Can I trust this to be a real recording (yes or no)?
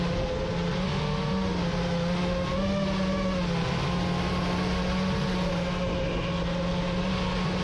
yes